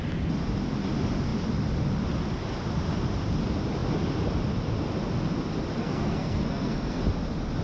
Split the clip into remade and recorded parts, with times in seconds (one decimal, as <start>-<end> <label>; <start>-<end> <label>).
0.0-5.8 recorded; 5.8-7.0 remade; 7.0-7.6 recorded